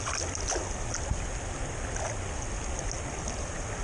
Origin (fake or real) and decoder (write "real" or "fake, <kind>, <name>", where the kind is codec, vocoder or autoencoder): real